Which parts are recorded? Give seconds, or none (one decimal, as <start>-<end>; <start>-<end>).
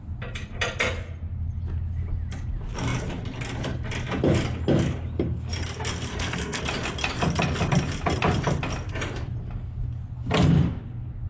0.0-6.1; 6.6-11.3